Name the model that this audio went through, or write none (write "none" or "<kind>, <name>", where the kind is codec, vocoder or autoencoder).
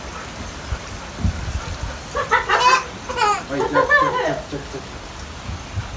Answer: none